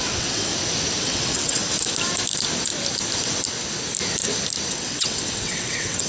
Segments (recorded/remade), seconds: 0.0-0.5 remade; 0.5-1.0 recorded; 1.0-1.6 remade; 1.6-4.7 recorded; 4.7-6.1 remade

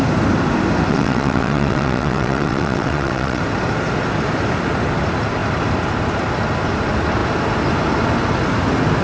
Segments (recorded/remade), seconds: 0.0-0.9 recorded; 0.9-3.4 remade; 3.4-9.0 recorded

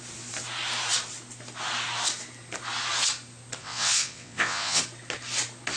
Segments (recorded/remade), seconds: 0.0-3.6 recorded; 3.6-4.8 remade; 4.8-5.8 recorded

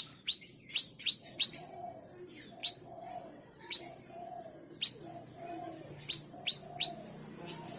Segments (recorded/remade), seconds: 0.0-2.6 recorded; 2.6-3.8 remade; 3.8-7.8 recorded

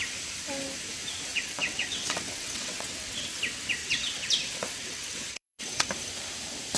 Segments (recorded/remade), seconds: 0.0-1.3 recorded; 1.3-3.4 remade; 3.4-3.8 recorded; 3.8-5.9 remade; 5.9-6.8 recorded